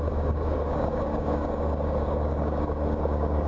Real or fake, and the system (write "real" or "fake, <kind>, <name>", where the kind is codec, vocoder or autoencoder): fake, codec, DAC